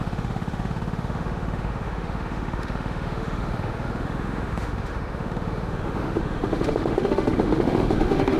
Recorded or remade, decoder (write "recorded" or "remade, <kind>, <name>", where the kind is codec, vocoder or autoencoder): remade, autoencoder, DAC-VAE